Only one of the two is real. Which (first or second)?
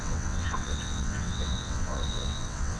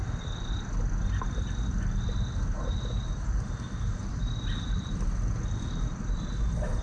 second